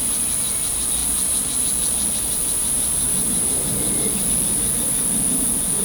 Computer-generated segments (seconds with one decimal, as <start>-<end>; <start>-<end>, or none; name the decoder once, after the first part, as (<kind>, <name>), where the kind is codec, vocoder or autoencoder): none